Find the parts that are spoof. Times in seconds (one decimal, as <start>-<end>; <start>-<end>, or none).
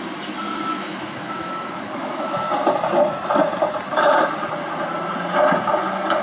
0.7-2.5